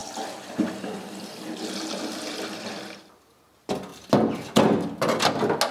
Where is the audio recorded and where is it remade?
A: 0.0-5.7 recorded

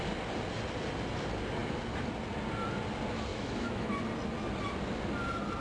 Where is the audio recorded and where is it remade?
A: 0.0-3.3 recorded; 3.3-4.0 remade; 4.0-5.6 recorded

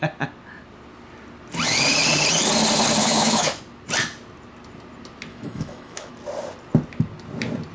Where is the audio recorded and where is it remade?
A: 0.0-3.0 recorded; 3.0-3.6 remade; 3.6-5.3 recorded; 5.3-6.1 remade; 6.1-7.7 recorded

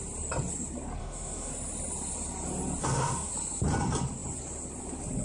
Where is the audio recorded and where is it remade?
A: 0.0-1.0 recorded; 1.0-1.5 remade; 1.5-2.8 recorded; 2.8-3.3 remade; 3.3-5.2 recorded

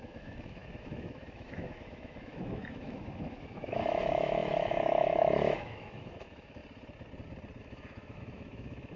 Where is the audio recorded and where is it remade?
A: 0.0-6.6 remade; 6.6-7.6 recorded; 7.6-9.0 remade

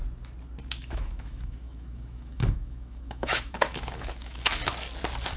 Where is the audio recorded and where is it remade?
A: 0.0-0.7 recorded; 0.7-4.6 remade; 4.6-5.4 recorded